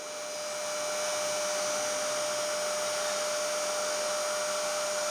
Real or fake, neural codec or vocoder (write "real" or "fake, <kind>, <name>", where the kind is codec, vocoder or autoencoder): real